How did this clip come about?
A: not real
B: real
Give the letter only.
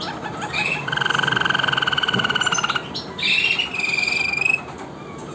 B